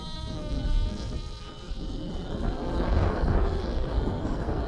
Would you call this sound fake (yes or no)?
yes